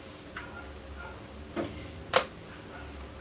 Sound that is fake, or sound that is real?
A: real